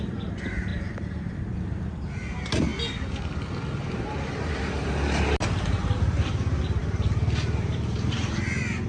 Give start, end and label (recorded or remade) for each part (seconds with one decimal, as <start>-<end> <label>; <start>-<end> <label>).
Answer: 0.0-0.7 recorded; 0.7-1.3 remade; 1.3-6.8 recorded; 6.8-8.4 remade; 8.4-8.9 recorded

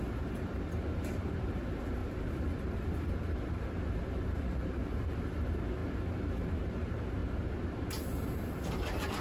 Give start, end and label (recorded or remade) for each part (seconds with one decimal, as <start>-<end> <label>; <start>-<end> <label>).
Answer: 0.0-5.8 remade; 5.8-6.7 recorded; 6.7-7.2 remade; 7.2-8.0 recorded; 8.0-9.2 remade

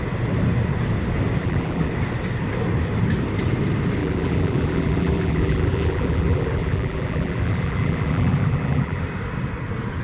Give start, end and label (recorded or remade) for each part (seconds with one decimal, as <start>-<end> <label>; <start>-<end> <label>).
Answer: 0.0-1.4 recorded; 1.4-1.9 remade; 1.9-4.0 recorded; 4.0-9.0 remade; 9.0-10.0 recorded

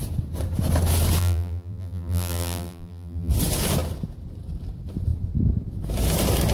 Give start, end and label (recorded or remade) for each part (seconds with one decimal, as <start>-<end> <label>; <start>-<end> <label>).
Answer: 0.0-1.2 recorded; 1.2-3.3 remade; 3.3-6.5 recorded

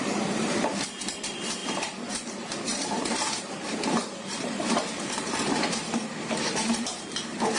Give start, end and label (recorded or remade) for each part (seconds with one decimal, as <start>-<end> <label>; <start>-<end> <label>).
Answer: 0.0-7.6 remade

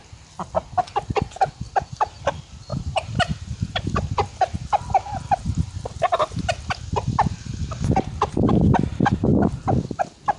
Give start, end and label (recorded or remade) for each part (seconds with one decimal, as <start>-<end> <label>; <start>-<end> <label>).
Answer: 0.0-2.7 recorded; 2.7-3.9 remade; 3.9-5.4 recorded; 5.4-6.4 remade; 6.4-8.9 recorded; 8.9-9.6 remade; 9.6-10.4 recorded

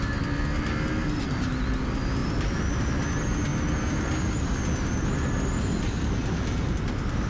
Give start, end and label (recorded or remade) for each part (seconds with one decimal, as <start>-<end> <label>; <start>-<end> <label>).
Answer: 0.0-7.3 recorded